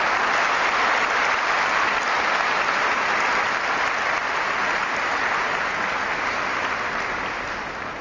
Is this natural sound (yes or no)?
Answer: yes